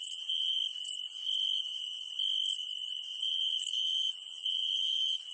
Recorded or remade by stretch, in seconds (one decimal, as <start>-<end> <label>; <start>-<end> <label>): 0.0-0.6 remade; 0.6-3.2 recorded; 3.2-5.3 remade